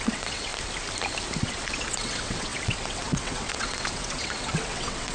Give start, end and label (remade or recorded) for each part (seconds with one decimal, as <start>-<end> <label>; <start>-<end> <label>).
0.0-0.5 remade; 0.5-1.4 recorded; 1.4-5.1 remade